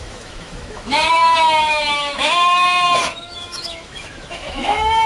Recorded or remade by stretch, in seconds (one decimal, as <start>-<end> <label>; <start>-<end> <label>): 0.0-5.1 remade